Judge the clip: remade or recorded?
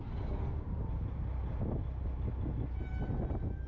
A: recorded